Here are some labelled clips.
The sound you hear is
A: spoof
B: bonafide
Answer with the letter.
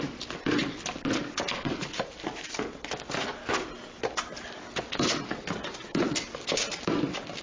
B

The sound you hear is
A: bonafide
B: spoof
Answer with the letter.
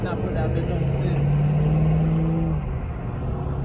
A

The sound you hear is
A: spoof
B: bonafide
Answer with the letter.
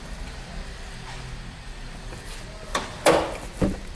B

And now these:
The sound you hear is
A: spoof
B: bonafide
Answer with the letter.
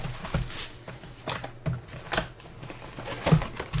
B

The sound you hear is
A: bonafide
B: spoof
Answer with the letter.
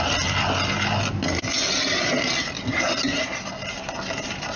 A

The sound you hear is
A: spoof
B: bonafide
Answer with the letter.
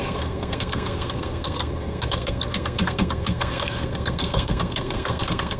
A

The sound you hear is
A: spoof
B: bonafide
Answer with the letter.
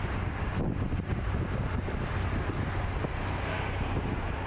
B